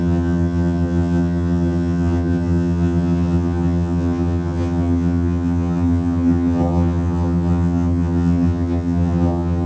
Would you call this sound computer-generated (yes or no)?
yes